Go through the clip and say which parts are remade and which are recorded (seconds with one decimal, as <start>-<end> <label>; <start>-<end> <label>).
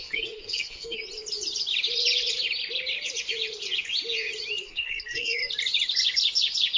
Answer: 0.0-1.0 remade; 1.0-4.6 recorded; 4.6-5.4 remade; 5.4-6.8 recorded